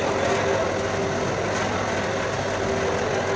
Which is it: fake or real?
real